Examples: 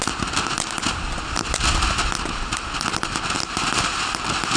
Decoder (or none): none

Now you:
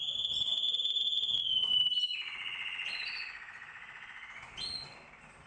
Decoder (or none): none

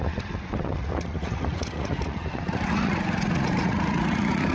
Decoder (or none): vocoder, Vocos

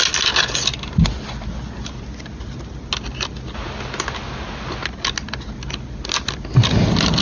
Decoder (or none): none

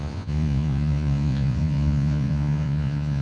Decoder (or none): vocoder, Vocos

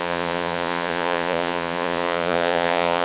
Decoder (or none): vocoder, Vocos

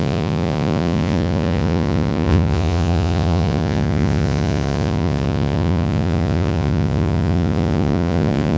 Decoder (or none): vocoder, Vocos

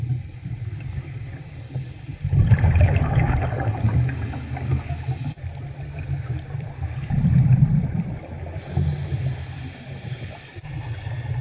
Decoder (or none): none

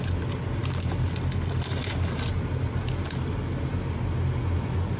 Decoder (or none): none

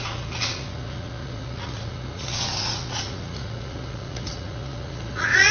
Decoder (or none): vocoder, Vocos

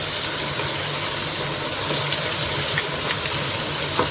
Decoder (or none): none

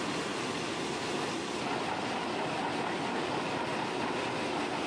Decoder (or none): none